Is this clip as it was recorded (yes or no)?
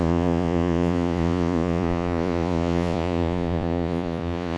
no